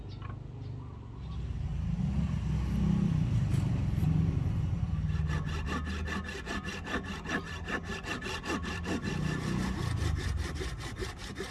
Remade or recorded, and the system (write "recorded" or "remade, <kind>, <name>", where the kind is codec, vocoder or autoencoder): recorded